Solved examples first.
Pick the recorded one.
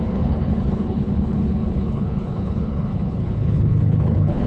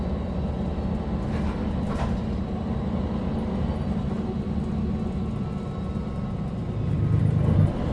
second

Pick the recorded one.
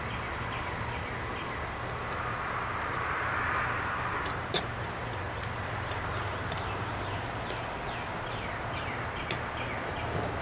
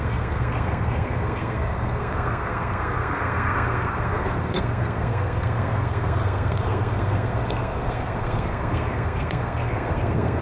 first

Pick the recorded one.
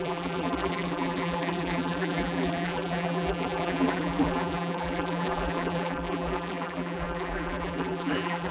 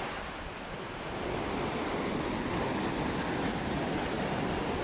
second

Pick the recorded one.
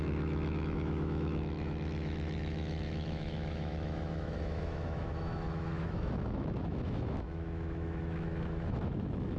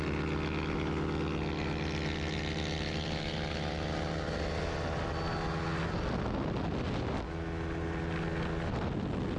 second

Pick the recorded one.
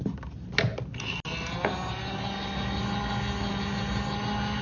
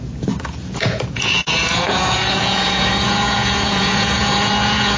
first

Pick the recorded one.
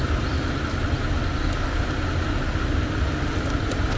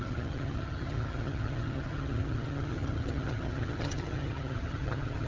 first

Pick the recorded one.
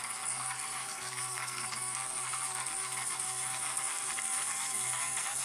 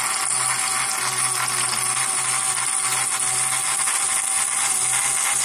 second